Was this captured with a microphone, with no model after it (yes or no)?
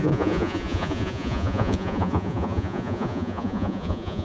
no